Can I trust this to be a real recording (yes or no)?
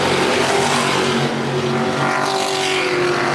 yes